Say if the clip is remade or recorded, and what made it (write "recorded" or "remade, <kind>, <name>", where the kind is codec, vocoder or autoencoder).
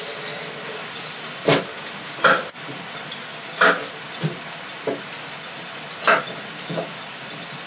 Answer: recorded